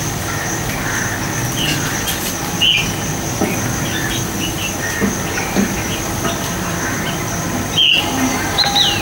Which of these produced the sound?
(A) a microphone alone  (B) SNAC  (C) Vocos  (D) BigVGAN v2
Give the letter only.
A